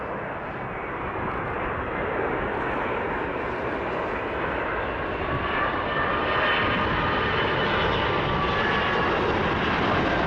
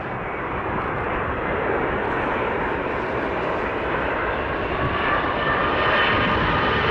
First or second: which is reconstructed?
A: second